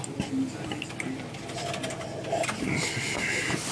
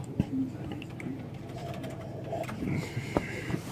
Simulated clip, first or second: second